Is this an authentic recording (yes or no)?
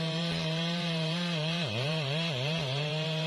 no